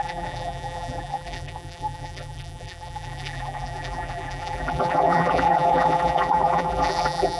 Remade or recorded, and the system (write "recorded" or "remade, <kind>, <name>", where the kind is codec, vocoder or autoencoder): remade, vocoder, BigVGAN v2